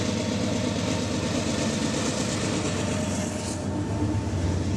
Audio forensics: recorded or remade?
recorded